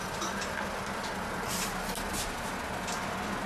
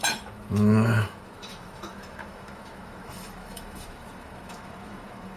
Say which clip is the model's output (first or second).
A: second